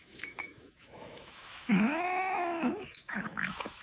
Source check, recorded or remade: remade